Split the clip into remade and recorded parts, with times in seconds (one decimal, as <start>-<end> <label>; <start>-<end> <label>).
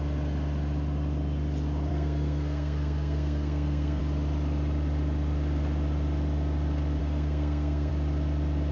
0.0-1.9 recorded; 1.9-4.0 remade; 4.0-7.0 recorded; 7.0-7.9 remade; 7.9-8.7 recorded